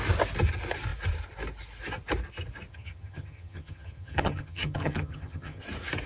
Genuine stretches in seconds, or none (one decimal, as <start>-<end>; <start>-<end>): 0.0-2.7; 5.6-6.1